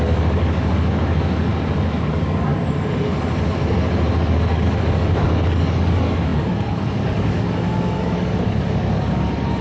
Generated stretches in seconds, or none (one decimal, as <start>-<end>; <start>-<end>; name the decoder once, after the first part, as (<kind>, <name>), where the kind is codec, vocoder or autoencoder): 0.0-1.5 (codec, DAC); 2.1-2.5; 4.2-9.6